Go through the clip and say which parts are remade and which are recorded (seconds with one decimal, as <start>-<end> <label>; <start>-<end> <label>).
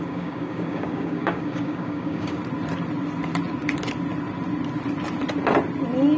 0.0-2.4 remade; 2.4-6.2 recorded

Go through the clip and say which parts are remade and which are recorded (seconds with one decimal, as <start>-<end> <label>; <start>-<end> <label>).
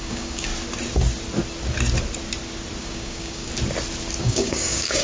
0.0-0.5 remade; 0.5-2.8 recorded; 2.8-3.5 remade; 3.5-4.2 recorded; 4.2-5.0 remade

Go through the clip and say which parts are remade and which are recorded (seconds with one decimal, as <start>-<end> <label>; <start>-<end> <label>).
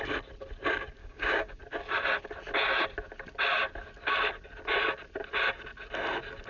0.0-1.0 recorded; 1.0-1.6 remade; 1.6-6.5 recorded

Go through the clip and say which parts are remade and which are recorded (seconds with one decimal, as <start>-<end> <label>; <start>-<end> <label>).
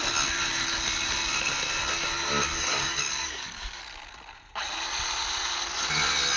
0.0-2.5 recorded; 2.5-3.8 remade; 3.8-6.4 recorded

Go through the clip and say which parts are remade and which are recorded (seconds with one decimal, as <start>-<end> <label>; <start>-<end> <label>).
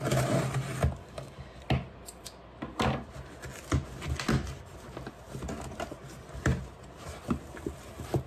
0.0-1.0 recorded; 1.0-1.6 remade; 1.6-8.3 recorded